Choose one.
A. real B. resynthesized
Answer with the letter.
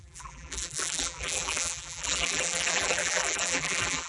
B